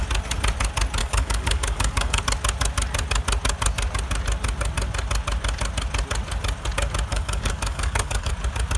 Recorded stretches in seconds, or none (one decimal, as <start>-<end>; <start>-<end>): 0.0-1.0; 2.2-7.1; 8.3-8.8